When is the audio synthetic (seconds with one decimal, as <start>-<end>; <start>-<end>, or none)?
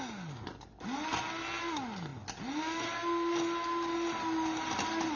none